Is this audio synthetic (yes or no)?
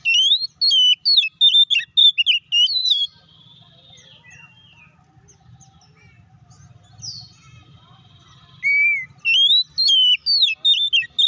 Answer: no